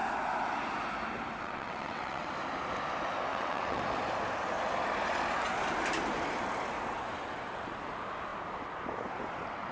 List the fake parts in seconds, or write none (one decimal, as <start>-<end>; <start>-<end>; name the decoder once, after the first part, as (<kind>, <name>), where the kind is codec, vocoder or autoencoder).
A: 1.4-2.3 (vocoder, WaveNeXt); 3.3-3.8